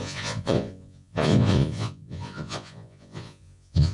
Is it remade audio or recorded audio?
remade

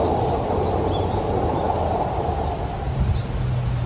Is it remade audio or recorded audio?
recorded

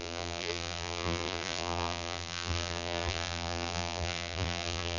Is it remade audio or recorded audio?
remade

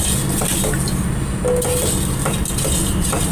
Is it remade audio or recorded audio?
recorded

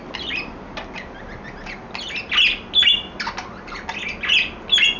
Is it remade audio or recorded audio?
recorded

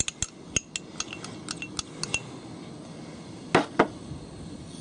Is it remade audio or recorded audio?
recorded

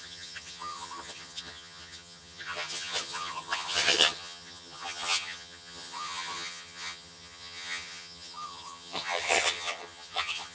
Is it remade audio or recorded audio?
remade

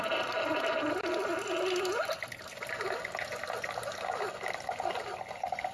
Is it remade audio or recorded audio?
recorded